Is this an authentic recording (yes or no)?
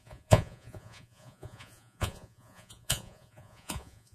no